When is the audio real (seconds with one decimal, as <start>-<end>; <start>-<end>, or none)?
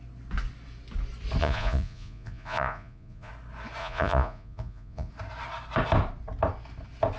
0.0-1.4; 3.3-3.8; 5.1-7.2